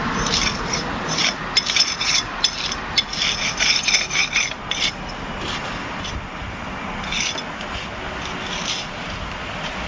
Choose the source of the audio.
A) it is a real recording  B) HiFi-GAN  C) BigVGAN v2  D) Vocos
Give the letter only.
A